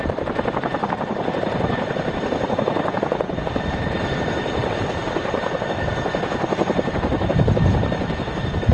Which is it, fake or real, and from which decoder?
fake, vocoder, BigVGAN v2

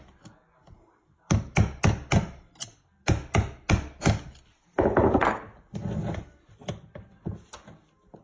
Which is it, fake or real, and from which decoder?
real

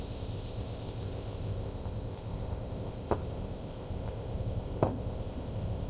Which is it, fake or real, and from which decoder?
fake, codec, ZipCodec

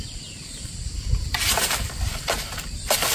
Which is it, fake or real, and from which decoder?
fake, vocoder, BigVGAN v2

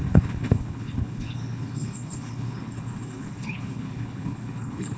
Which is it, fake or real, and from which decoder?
fake, codec, HILCodec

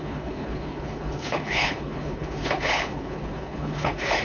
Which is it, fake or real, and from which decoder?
fake, codec, HILCodec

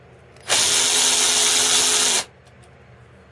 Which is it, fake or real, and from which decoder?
real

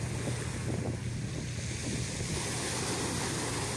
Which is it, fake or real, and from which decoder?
real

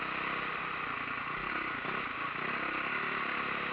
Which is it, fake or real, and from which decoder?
real